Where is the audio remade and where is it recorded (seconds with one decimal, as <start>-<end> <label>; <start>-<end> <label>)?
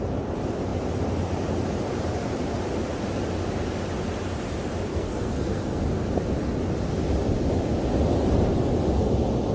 0.0-4.9 recorded; 4.9-5.8 remade; 5.8-9.5 recorded